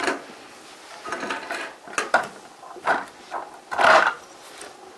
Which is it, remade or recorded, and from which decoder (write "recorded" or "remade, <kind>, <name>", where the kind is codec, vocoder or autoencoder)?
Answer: recorded